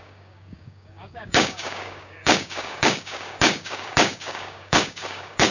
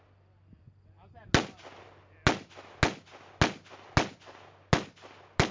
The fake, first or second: first